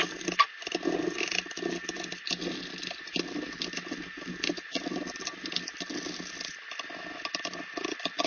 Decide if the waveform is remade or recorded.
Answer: recorded